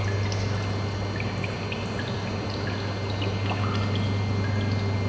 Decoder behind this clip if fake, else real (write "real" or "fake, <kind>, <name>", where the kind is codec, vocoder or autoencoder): real